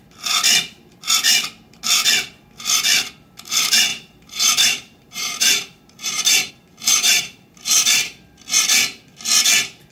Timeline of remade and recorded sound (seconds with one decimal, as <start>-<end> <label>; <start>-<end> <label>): 0.0-3.9 recorded; 3.9-6.5 remade; 6.5-6.9 recorded; 6.9-7.6 remade; 7.6-9.9 recorded